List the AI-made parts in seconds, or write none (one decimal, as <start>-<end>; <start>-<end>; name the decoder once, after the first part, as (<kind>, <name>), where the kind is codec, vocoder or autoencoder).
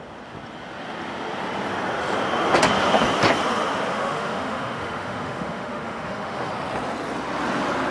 3.9-6.5 (autoencoder, DAC-VAE)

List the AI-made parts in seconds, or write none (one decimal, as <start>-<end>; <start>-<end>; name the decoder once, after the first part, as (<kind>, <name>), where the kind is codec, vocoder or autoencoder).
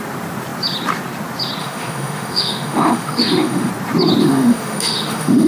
1.6-3.7 (autoencoder, DAC-VAE); 4.2-5.5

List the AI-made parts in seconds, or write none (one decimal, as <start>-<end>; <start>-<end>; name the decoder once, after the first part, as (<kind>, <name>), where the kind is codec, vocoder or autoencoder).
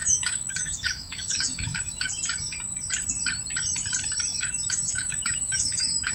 0.0-2.1 (autoencoder, DAC-VAE); 4.3-6.1